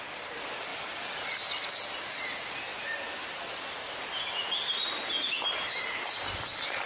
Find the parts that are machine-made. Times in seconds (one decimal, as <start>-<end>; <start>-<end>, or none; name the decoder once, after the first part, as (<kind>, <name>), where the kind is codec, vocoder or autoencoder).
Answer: none